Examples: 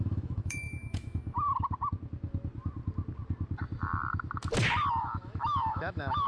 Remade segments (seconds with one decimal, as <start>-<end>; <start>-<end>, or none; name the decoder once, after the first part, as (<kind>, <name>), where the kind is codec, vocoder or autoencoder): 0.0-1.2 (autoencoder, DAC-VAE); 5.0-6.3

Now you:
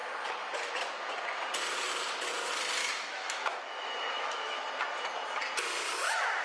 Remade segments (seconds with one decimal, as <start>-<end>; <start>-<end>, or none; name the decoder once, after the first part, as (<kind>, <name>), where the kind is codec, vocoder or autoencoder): 2.8-4.7 (autoencoder, DAC-VAE)

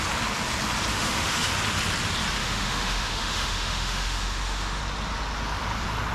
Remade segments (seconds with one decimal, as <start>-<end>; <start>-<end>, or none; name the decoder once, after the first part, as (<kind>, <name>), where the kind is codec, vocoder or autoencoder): 0.9-1.5 (autoencoder, DAC-VAE); 2.4-4.8

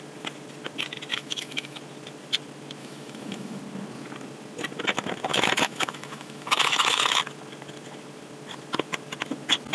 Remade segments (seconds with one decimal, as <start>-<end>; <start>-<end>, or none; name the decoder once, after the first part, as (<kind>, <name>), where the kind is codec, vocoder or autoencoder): 1.1-1.8 (autoencoder, DAC-VAE); 2.8-3.6; 5.3-7.2

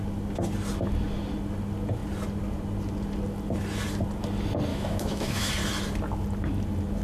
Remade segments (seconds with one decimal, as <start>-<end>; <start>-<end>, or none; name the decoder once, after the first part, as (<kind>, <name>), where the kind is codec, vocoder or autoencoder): 4.7-5.5 (autoencoder, DAC-VAE)